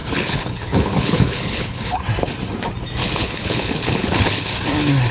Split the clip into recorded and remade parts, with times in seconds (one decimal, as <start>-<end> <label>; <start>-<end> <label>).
0.0-2.0 remade; 2.0-3.0 recorded; 3.0-4.5 remade; 4.5-5.1 recorded